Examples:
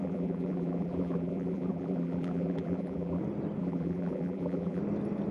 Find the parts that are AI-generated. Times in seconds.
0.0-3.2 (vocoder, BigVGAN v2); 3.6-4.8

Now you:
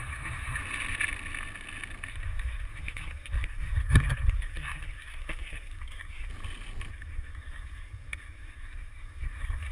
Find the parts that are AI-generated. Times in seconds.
0.0-0.6 (codec, SNAC); 2.1-6.3; 6.9-9.7

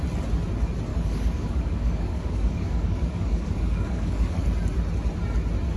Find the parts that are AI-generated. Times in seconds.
0.9-4.4 (codec, DAC)

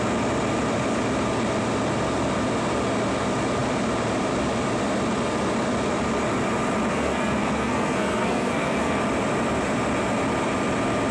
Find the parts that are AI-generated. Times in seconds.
6.9-9.0 (codec, SNAC)

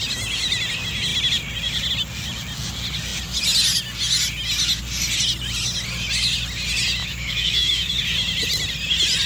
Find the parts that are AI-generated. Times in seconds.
7.0-8.0 (autoencoder, DAC-VAE)